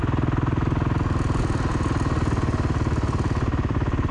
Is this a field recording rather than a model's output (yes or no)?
yes